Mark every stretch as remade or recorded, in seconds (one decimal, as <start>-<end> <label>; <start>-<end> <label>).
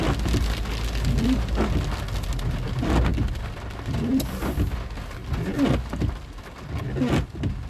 0.0-7.7 recorded